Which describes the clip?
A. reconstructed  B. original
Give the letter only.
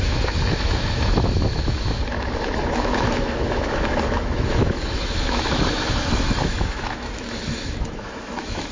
A